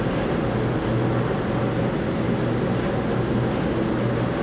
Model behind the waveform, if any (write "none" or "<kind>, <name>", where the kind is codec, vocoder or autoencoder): none